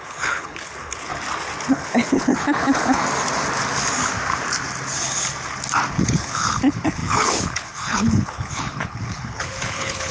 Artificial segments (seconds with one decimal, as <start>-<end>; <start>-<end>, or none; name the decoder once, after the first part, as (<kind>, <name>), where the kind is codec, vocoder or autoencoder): 0.0-1.1 (codec, HILCodec); 1.7-3.0; 5.9-10.1